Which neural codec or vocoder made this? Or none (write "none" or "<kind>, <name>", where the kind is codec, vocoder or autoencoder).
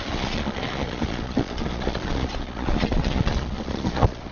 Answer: vocoder, Vocos